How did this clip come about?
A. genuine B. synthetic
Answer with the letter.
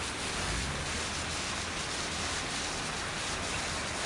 A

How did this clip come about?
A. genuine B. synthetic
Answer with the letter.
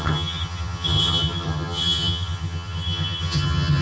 B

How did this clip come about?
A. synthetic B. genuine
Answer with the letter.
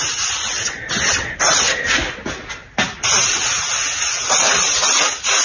B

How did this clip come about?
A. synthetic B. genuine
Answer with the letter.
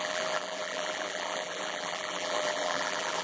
A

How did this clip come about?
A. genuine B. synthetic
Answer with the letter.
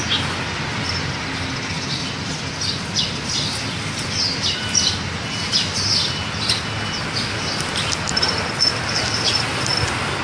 A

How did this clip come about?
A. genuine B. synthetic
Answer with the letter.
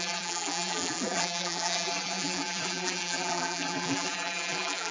B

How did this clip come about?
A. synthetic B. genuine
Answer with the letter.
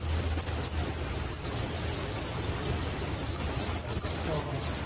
B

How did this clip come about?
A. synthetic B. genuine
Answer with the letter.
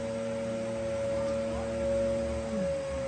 B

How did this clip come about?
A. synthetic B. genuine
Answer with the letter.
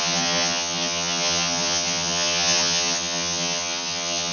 A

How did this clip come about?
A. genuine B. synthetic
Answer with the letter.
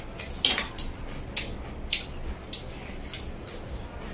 A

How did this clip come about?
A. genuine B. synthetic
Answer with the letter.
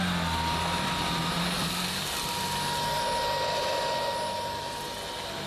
A